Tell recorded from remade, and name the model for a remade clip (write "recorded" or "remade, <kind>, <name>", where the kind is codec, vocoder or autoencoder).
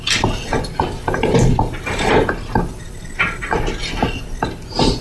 recorded